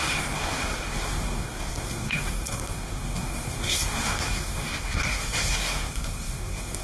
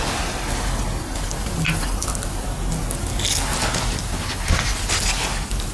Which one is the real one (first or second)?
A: second